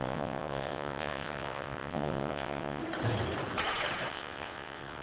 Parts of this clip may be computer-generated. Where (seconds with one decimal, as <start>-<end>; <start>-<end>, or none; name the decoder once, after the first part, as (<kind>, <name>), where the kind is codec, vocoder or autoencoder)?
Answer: 0.0-2.8 (vocoder, WaveNeXt); 4.1-5.0